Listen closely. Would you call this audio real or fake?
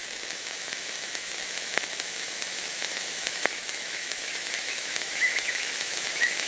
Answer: fake